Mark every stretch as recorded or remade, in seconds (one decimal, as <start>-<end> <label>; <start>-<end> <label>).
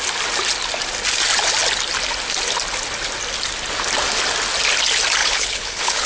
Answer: 0.0-5.2 recorded; 5.2-6.1 remade